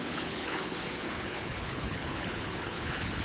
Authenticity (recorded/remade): remade